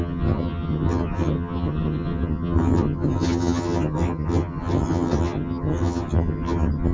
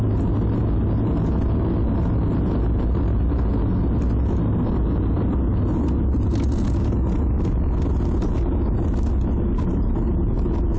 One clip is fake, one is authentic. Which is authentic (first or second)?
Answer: second